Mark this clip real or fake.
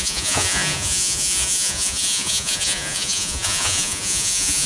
fake